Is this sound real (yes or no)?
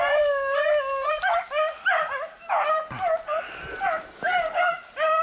yes